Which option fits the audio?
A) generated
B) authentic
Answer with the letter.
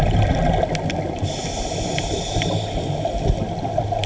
B